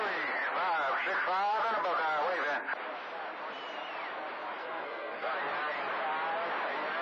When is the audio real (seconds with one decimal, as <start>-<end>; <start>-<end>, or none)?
0.0-4.6; 5.3-7.0